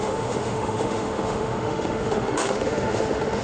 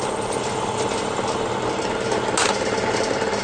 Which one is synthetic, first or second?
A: first